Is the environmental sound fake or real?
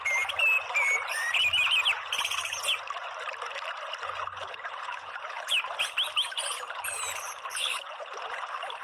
real